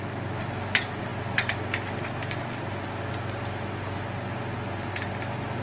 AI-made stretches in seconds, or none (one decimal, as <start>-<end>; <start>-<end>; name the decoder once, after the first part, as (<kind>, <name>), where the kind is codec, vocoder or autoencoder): none